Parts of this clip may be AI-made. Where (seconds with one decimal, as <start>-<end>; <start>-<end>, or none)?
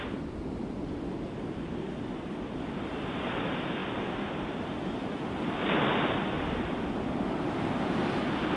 none